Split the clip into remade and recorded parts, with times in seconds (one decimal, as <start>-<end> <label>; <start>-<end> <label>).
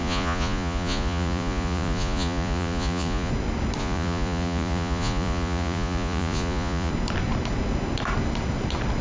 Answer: 0.0-3.3 remade; 3.3-3.8 recorded; 3.8-6.9 remade; 6.9-9.0 recorded